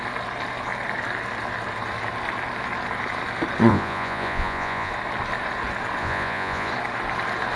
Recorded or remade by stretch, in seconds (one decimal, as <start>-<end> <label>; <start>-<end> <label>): 0.0-3.7 recorded; 3.7-4.9 remade; 4.9-6.0 recorded; 6.0-6.7 remade; 6.7-7.6 recorded